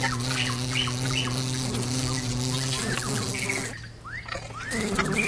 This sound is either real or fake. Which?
real